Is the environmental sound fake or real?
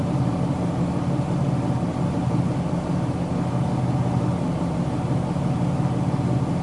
real